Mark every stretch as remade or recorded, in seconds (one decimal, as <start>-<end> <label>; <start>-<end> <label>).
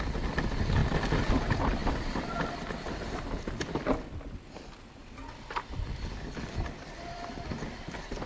0.0-8.3 recorded